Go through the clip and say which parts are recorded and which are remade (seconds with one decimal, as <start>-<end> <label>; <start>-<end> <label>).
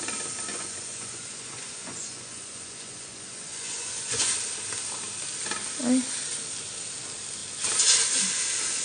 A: 0.0-0.5 recorded; 0.5-4.3 remade; 4.3-8.8 recorded